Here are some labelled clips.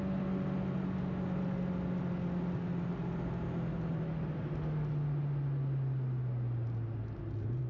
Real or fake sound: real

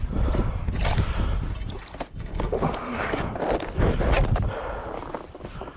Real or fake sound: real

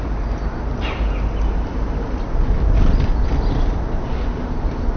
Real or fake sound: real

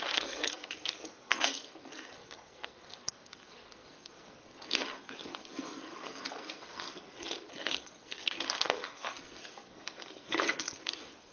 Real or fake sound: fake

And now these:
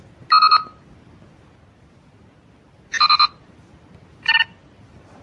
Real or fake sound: real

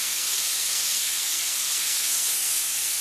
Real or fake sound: fake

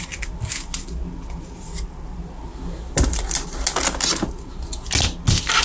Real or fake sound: real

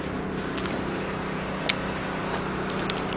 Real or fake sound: real